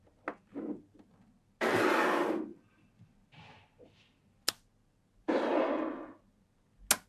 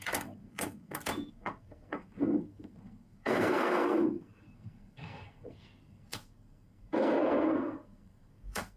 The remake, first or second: second